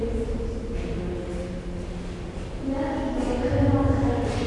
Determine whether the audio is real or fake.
real